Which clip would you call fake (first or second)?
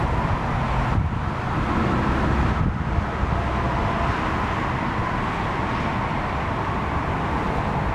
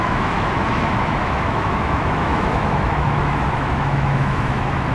second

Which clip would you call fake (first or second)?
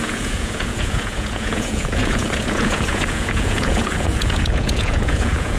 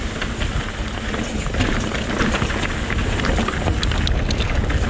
first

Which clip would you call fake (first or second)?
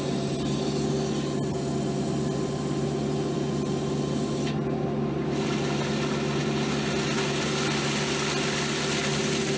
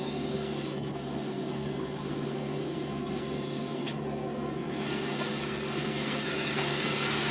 second